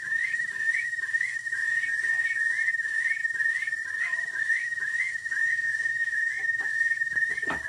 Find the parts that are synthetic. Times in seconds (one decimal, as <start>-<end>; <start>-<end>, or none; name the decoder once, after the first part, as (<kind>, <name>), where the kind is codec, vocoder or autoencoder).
0.0-1.6 (autoencoder, DAC-VAE); 2.7-3.2; 4.0-7.7